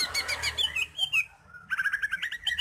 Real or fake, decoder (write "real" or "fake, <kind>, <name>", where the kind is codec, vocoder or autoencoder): real